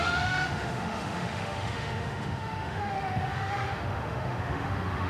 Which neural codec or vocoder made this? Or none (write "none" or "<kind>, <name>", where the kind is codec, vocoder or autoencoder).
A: autoencoder, DAC-VAE